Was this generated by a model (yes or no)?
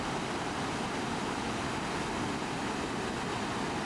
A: no